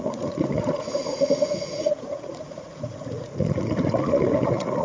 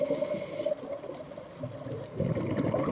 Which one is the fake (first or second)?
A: first